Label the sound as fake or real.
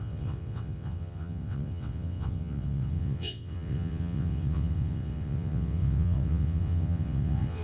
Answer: fake